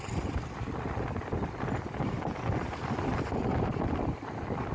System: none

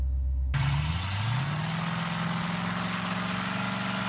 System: none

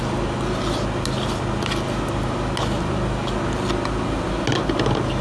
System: none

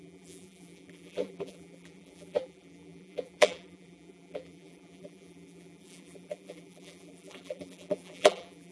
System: vocoder, BigVGAN v2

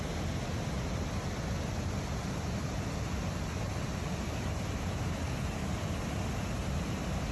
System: none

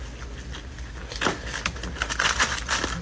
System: none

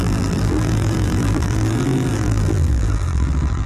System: vocoder, BigVGAN v2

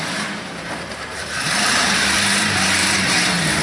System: vocoder, BigVGAN v2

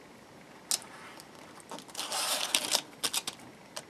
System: none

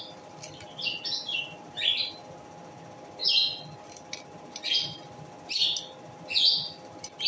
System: none